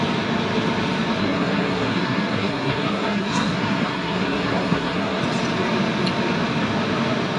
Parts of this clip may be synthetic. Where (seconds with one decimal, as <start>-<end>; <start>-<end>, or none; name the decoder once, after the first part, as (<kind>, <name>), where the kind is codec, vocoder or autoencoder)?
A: 1.2-5.2 (codec, SNAC)